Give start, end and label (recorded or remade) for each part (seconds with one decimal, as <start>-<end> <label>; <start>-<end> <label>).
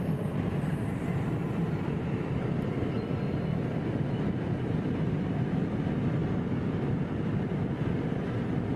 0.0-8.8 recorded